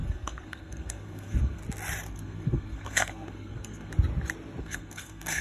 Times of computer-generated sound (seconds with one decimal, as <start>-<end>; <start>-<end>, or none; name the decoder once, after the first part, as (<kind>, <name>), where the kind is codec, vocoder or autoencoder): 0.0-1.6 (codec, SNAC); 2.1-3.9; 4.6-5.4